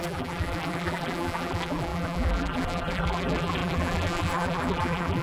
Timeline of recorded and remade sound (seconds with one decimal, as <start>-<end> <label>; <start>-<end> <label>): 0.0-5.2 remade